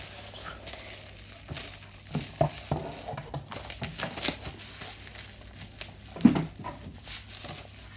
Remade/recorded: recorded